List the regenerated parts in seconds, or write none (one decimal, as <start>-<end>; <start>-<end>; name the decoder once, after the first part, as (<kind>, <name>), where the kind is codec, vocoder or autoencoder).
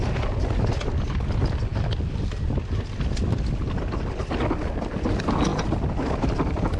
5.5-6.2 (vocoder, BigVGAN v2)